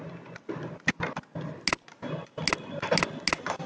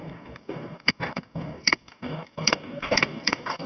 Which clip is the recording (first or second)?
first